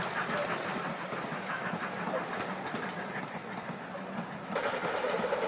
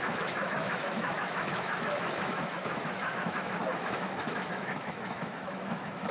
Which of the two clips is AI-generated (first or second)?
second